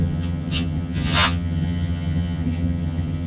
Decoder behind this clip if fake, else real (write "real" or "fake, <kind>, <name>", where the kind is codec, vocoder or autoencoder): fake, vocoder, HiFi-GAN